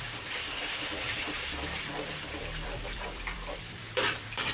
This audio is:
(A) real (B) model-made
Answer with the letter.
B